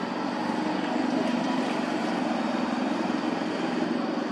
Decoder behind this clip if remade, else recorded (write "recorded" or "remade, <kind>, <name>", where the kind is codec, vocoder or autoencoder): recorded